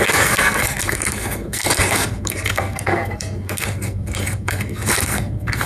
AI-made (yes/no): yes